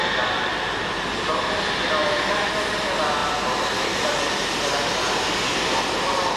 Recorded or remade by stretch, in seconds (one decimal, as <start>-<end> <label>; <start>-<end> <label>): 0.0-6.4 recorded